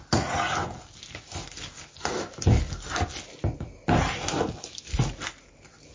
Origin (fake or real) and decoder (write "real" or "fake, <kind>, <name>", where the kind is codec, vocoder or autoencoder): real